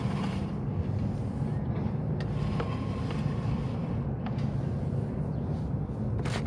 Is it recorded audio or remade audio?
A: recorded